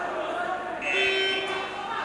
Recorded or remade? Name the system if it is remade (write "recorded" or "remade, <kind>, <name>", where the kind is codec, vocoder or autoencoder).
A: recorded